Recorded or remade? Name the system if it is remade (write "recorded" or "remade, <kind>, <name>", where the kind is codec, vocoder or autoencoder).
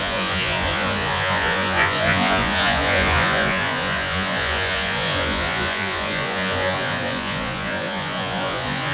remade, vocoder, Vocos